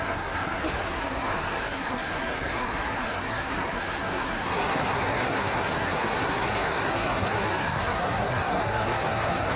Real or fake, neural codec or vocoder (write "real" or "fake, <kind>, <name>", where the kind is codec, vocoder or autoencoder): fake, codec, SNAC